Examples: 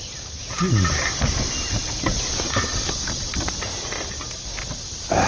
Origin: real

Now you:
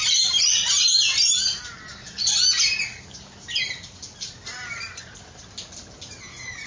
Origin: real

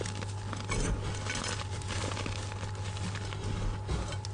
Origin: real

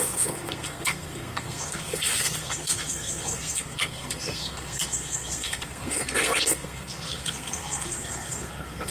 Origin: fake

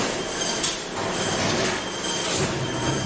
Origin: real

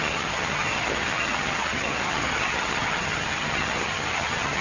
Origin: fake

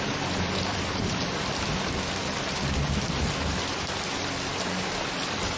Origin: fake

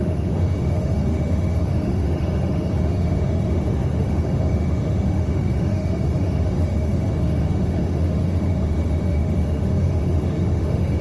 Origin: fake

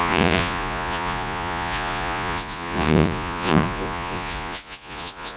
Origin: fake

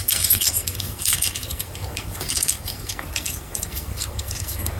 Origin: fake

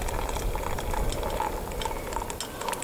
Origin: real